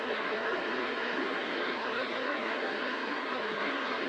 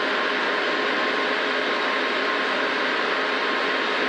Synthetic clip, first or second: first